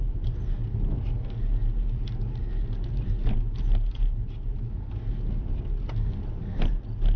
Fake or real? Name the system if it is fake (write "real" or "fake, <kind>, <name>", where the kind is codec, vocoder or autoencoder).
real